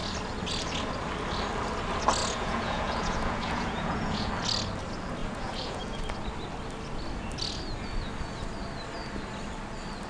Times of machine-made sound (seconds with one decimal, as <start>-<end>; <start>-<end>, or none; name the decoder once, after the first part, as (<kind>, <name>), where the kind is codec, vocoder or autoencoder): 2.2-4.3 (vocoder, Vocos); 5.2-6.0

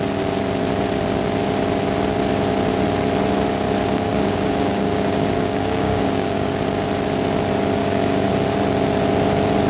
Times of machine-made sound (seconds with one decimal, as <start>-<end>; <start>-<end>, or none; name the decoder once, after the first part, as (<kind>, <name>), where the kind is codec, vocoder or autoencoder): 4.1-6.5 (codec, DAC); 7.8-8.3

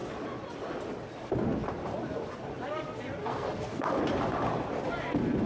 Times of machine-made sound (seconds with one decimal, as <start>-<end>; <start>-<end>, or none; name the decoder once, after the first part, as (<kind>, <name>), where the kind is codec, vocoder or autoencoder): 3.2-3.9 (codec, SNAC)

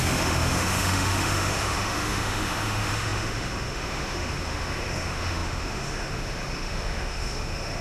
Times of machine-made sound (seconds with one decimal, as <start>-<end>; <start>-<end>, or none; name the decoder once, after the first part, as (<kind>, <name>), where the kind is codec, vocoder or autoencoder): 0.0-7.8 (autoencoder, DAC-VAE)

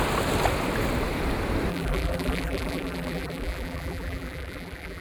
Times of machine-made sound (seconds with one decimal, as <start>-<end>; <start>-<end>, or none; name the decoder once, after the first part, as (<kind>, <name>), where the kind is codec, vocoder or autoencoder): 1.7-5.0 (vocoder, BigVGAN v2)